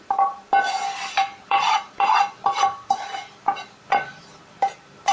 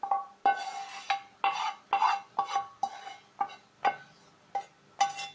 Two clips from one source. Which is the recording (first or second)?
second